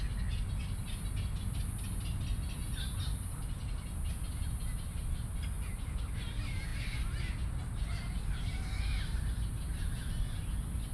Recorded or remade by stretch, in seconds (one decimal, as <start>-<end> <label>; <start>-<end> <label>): 0.0-10.9 recorded